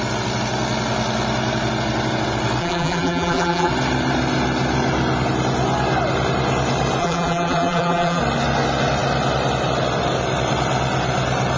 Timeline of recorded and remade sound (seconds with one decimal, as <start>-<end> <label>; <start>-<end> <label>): 0.0-2.6 recorded; 2.6-3.7 remade; 3.7-7.0 recorded; 7.0-8.2 remade; 8.2-11.6 recorded

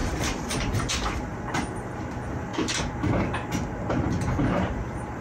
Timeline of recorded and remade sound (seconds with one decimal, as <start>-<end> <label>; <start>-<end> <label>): 0.0-1.3 remade; 1.3-2.0 recorded; 2.0-2.5 remade; 2.5-4.2 recorded; 4.2-5.2 remade

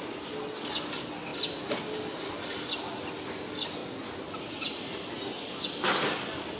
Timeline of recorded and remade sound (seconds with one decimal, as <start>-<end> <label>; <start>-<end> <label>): 0.0-6.6 recorded

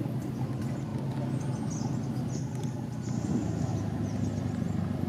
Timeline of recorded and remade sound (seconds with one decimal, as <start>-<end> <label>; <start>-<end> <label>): 0.0-3.7 recorded; 3.7-4.3 remade; 4.3-5.1 recorded

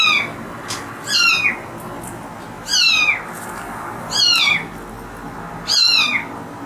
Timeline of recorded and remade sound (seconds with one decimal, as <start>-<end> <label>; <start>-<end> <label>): 0.0-6.7 recorded